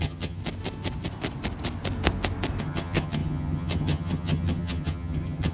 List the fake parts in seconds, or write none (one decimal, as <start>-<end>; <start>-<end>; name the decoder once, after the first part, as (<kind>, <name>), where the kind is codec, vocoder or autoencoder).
0.0-0.4 (vocoder, HiFi-GAN); 2.6-5.5